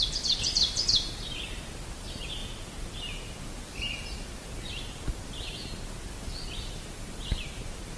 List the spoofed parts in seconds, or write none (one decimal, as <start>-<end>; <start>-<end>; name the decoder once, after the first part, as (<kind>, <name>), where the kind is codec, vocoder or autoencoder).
none